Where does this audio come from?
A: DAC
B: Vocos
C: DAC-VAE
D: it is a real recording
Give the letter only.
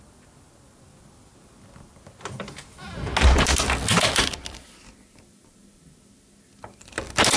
D